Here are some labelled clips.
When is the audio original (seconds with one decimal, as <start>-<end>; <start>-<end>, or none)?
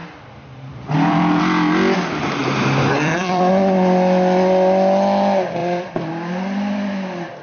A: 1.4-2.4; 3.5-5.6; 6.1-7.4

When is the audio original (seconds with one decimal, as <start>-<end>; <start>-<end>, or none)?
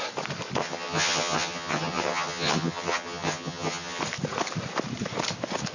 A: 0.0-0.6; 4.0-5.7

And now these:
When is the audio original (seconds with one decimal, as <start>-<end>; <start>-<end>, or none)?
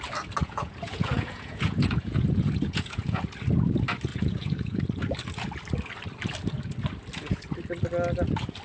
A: 0.0-0.4; 3.2-4.1; 4.8-8.6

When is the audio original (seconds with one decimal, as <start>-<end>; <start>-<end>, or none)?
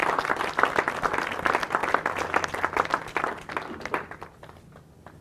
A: 1.4-5.2